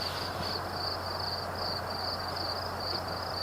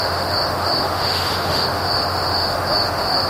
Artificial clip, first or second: second